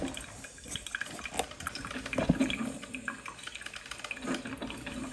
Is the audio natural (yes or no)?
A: yes